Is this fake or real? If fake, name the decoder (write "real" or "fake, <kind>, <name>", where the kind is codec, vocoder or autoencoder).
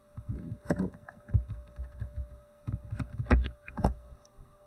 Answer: fake, codec, SNAC